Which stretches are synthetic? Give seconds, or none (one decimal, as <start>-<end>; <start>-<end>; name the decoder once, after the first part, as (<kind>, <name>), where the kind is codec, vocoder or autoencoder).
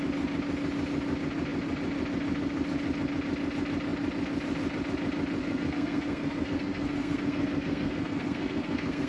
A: 5.4-9.1 (codec, SNAC)